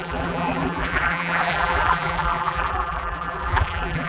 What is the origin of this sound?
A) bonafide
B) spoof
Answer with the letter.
B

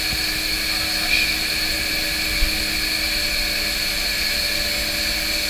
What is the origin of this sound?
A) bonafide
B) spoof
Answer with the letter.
A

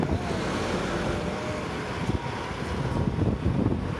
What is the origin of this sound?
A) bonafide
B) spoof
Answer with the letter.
A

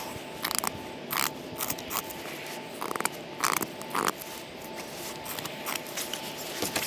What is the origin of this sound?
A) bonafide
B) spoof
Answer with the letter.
A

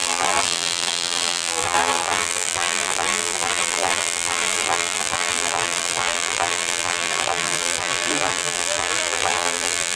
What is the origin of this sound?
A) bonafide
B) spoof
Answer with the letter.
B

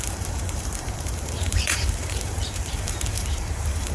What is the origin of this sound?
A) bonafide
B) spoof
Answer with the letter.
B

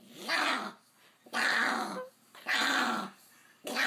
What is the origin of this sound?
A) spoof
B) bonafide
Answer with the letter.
B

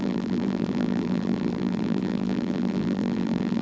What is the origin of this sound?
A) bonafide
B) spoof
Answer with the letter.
B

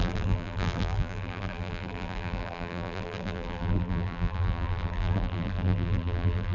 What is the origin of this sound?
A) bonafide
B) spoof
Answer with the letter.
B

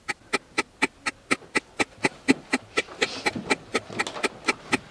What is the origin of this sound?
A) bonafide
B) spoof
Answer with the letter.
A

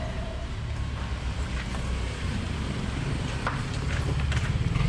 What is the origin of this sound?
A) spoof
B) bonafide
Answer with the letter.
A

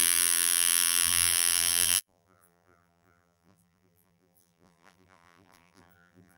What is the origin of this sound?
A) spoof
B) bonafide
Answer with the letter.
A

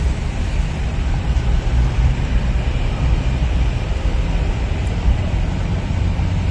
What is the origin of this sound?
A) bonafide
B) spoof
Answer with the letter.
B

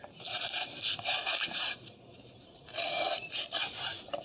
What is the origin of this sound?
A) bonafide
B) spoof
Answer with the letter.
B